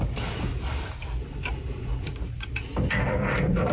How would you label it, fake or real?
fake